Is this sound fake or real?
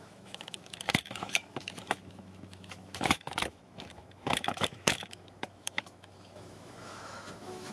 fake